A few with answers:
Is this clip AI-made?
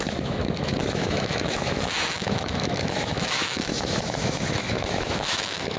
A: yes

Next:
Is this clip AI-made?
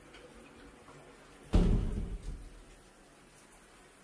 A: no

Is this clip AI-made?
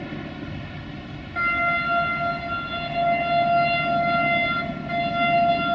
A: no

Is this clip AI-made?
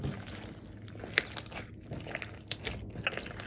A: no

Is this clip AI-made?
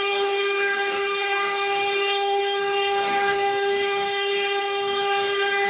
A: yes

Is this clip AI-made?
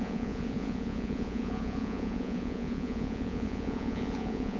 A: yes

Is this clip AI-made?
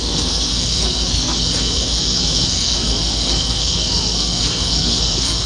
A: yes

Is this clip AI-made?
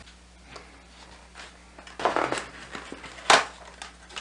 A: no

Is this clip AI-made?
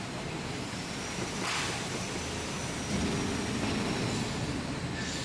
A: no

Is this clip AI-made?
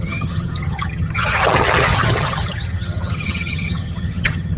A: yes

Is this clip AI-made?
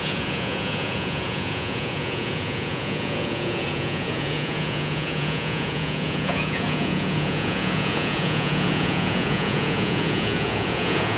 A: yes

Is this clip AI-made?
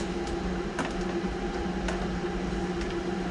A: no